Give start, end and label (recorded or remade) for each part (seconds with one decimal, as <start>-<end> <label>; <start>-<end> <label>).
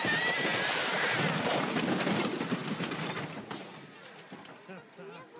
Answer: 0.0-5.4 recorded